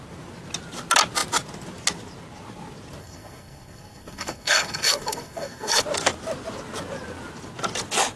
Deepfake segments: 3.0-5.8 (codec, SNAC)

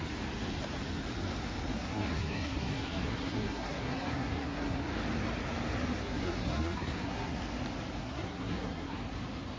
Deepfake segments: 1.7-4.8 (codec, SNAC); 6.0-7.4; 8.0-9.0

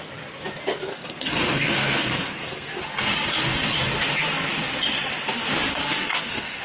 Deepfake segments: 0.9-2.8 (codec, SNAC); 5.7-6.6

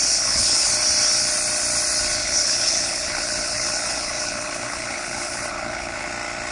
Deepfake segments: 0.0-0.7 (codec, HILCodec); 2.2-6.1

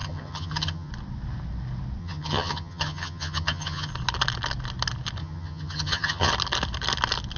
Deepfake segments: 0.0-0.9 (vocoder, HiFi-GAN); 2.0-3.9; 5.2-6.3